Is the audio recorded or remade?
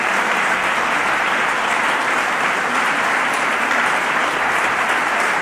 remade